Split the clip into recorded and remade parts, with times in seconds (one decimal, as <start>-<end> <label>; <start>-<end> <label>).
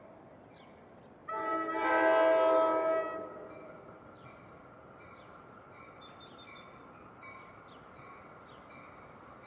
0.0-1.2 recorded; 1.2-1.9 remade; 1.9-6.8 recorded; 6.8-7.5 remade; 7.5-9.5 recorded